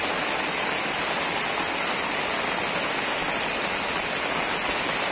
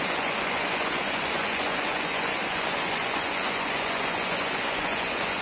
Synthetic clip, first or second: second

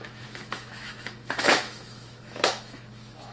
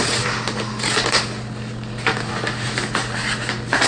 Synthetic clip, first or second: first